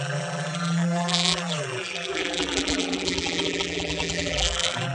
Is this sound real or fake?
fake